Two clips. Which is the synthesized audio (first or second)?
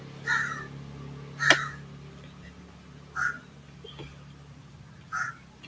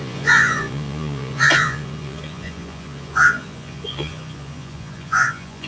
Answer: second